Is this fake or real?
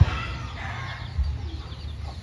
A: real